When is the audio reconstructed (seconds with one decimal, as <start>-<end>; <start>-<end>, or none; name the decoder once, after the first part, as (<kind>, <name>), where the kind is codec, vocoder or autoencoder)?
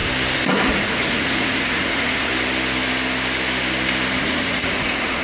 0.7-2.3 (vocoder, Vocos); 4.2-5.2